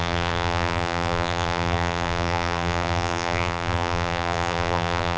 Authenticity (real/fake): fake